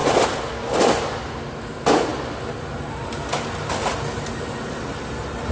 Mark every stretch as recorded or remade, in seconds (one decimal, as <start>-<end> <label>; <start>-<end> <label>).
0.0-5.5 recorded